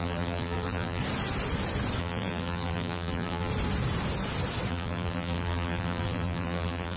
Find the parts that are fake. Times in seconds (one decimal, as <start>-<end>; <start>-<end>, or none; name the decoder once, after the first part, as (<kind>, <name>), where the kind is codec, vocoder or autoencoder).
0.0-1.0 (vocoder, BigVGAN v2); 2.0-3.5; 4.7-7.0